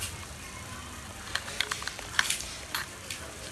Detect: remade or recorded remade